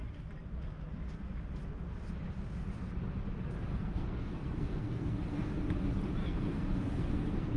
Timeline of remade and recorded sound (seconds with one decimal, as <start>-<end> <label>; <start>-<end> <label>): 0.0-3.7 recorded; 3.7-5.6 remade; 5.6-6.2 recorded; 6.2-7.6 remade